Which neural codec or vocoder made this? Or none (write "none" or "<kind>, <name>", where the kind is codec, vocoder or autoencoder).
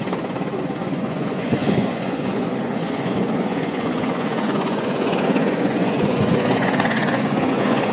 vocoder, Vocos